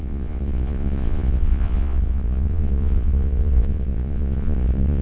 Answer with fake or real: fake